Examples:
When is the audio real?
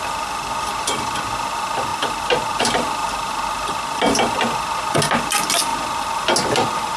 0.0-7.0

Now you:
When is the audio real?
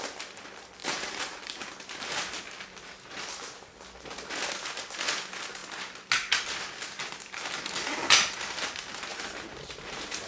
0.0-0.8; 2.4-9.1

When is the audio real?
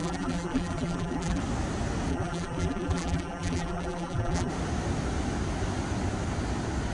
1.4-2.1; 4.5-6.9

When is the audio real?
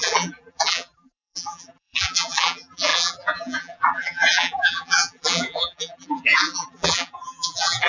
none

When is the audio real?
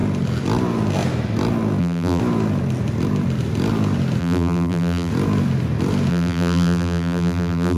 0.0-1.8; 2.2-4.2; 5.1-6.1